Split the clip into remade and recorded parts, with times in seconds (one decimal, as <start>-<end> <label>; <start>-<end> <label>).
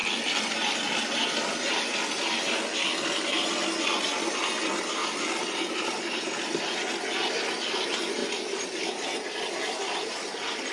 0.0-3.2 remade; 3.2-5.0 recorded; 5.0-6.6 remade; 6.6-10.7 recorded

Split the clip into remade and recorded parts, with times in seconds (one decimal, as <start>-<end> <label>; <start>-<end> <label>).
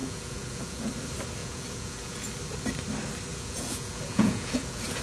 0.0-0.9 remade; 0.9-1.4 recorded; 1.4-2.3 remade; 2.3-3.3 recorded; 3.3-5.0 remade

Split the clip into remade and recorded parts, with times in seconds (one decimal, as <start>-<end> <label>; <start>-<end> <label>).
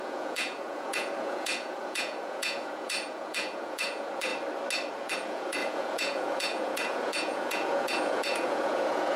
0.0-4.3 remade; 4.3-4.9 recorded; 4.9-9.2 remade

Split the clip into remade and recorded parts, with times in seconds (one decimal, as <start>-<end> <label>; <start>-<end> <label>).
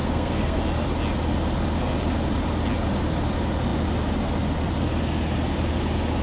0.0-0.6 remade; 0.6-6.2 recorded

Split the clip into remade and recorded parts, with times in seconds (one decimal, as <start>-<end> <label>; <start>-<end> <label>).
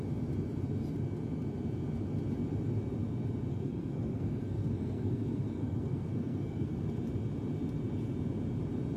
0.0-3.5 recorded; 3.5-6.9 remade; 6.9-9.0 recorded